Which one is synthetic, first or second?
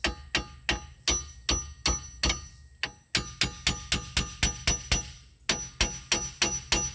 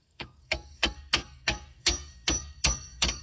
second